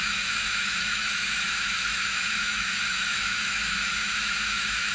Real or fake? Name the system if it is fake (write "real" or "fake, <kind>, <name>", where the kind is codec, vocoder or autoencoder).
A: fake, autoencoder, DAC-VAE